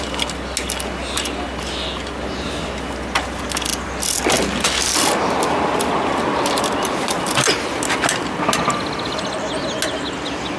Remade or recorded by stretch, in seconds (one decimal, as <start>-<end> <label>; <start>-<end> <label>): 0.0-10.6 recorded